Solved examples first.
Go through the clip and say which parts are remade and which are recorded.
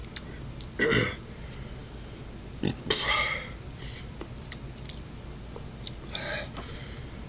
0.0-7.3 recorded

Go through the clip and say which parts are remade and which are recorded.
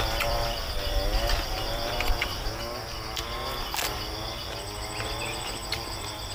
0.0-2.3 remade; 2.3-5.2 recorded; 5.2-6.3 remade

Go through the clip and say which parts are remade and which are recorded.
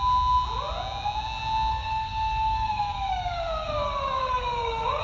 0.0-1.7 recorded; 1.7-5.0 remade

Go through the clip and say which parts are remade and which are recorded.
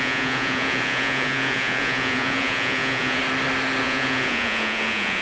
0.0-3.2 remade; 3.2-3.8 recorded; 3.8-5.2 remade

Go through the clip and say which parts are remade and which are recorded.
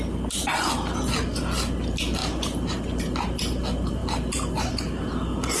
0.0-5.6 recorded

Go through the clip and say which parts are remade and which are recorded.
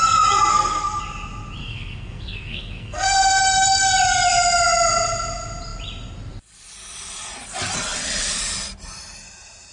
0.0-0.5 recorded; 0.5-1.0 remade; 1.0-1.6 recorded; 1.6-3.4 remade; 3.4-9.7 recorded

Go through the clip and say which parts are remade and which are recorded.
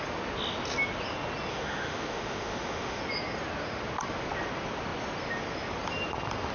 0.0-1.5 recorded; 1.5-3.0 remade; 3.0-6.5 recorded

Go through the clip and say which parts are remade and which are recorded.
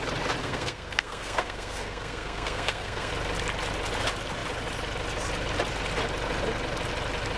0.0-0.4 recorded; 0.4-3.1 remade; 3.1-7.4 recorded